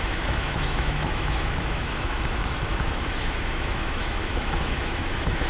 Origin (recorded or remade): remade